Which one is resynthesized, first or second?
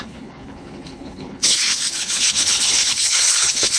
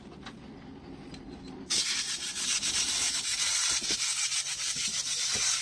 first